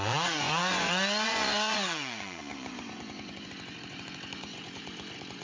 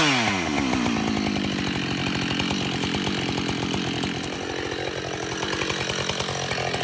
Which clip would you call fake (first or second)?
first